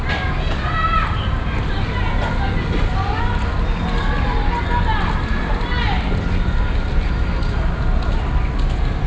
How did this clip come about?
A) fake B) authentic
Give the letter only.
B